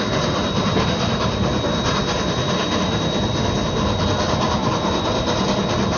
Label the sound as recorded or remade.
recorded